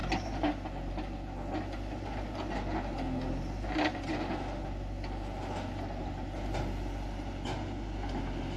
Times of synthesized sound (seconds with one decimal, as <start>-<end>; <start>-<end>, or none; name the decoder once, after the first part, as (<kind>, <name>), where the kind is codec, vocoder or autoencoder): none